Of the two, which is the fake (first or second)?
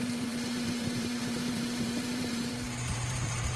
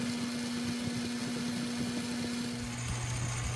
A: first